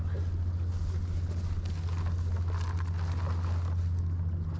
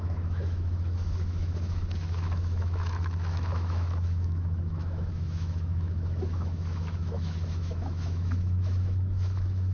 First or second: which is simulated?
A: second